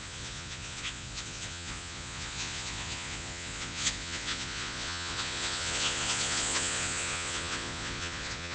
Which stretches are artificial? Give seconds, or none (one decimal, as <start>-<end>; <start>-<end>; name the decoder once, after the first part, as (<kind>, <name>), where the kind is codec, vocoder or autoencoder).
0.0-8.5 (vocoder, Vocos)